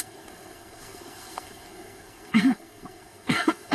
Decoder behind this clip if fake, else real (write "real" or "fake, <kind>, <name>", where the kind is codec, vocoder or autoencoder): fake, codec, SNAC